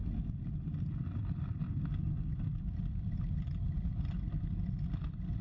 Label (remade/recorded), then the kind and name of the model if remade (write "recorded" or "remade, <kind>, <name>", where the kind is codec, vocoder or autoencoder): recorded